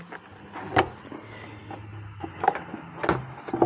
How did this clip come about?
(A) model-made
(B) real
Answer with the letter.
B